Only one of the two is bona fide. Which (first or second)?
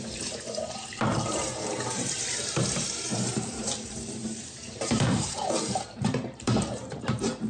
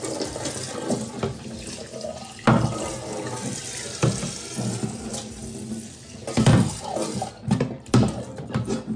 second